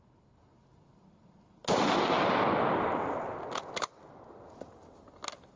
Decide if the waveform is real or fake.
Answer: real